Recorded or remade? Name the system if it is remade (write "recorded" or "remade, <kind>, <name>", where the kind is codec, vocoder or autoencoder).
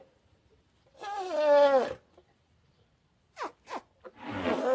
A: recorded